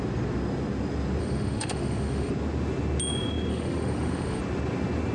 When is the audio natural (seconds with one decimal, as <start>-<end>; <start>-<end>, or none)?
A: 0.0-1.2; 2.3-3.5; 4.4-5.1

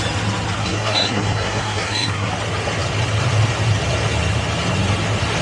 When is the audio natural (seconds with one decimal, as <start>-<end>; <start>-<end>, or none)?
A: 0.0-0.6; 2.3-5.4

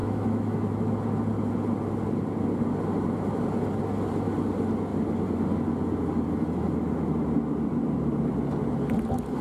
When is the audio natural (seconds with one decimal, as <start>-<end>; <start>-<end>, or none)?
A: 0.7-9.4